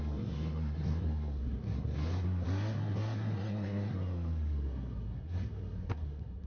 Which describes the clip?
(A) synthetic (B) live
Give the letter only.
A